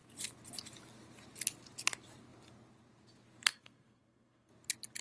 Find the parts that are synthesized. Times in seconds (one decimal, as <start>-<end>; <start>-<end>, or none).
3.5-4.5

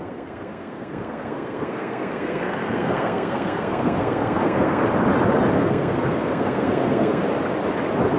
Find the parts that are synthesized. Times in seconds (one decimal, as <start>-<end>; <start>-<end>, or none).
0.0-4.8; 5.6-7.2

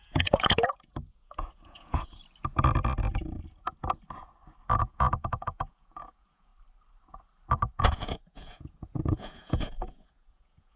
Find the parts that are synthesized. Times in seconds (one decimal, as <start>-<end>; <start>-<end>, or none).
0.0-2.2; 4.8-6.5; 7.8-10.8

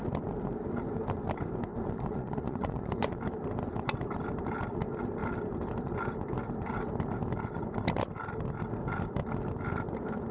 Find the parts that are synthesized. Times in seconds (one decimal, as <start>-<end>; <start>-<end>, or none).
1.7-3.2

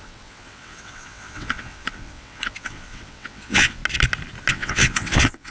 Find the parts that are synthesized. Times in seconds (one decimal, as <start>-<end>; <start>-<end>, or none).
0.0-3.8; 4.5-5.5

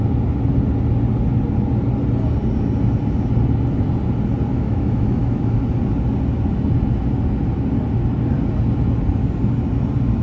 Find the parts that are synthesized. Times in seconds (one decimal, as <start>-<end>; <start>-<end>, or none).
4.5-5.6

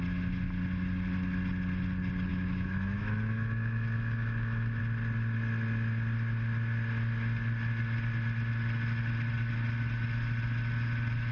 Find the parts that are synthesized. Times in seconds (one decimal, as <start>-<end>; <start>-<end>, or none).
2.3-4.8

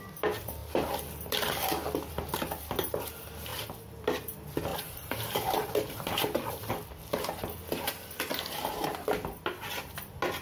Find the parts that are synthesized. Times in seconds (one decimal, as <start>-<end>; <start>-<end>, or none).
4.7-6.7